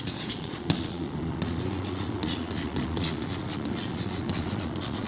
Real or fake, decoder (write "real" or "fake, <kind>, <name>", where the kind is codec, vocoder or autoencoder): fake, vocoder, Vocos